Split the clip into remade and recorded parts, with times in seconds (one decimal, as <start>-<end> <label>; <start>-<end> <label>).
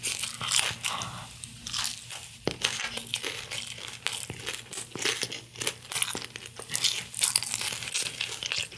0.0-8.8 recorded